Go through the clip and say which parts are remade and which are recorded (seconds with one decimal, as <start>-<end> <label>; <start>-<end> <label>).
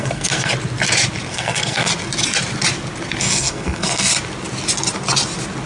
0.0-0.5 remade; 0.5-1.3 recorded; 1.3-1.9 remade; 1.9-3.2 recorded; 3.2-4.1 remade; 4.1-5.7 recorded